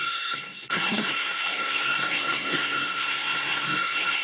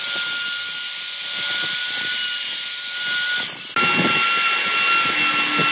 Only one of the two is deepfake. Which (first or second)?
first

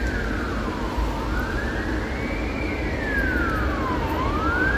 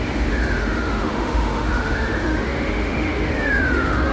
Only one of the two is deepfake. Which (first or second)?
second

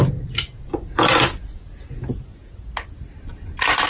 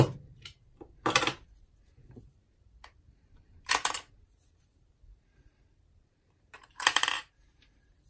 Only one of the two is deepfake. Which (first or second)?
second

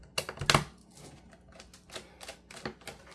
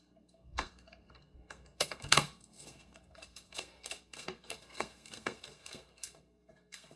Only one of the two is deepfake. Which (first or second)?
second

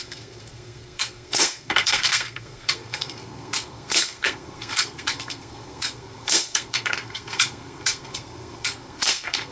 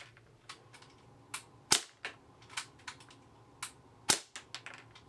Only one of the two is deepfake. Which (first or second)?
first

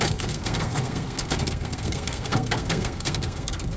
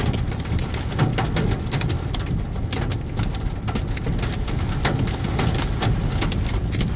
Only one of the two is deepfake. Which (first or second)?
first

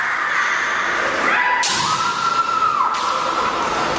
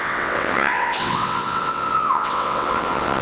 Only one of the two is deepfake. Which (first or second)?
second